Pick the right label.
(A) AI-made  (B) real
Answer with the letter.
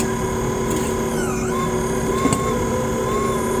B